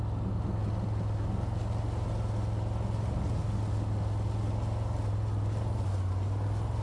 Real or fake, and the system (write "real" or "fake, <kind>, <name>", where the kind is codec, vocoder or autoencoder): real